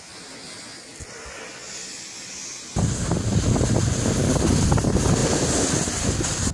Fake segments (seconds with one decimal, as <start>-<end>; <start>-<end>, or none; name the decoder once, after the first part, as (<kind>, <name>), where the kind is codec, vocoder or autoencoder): 0.9-3.5 (vocoder, BigVGAN v2); 5.2-6.5